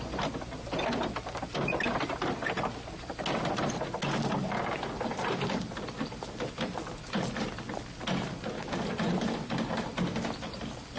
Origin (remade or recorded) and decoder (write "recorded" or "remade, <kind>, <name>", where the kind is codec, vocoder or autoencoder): recorded